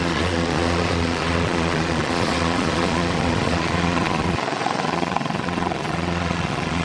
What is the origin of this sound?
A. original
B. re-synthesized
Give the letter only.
B